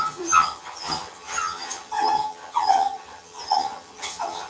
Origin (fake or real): fake